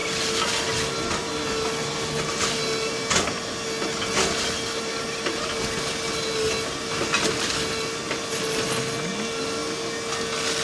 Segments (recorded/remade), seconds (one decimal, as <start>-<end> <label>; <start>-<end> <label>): 0.0-10.6 recorded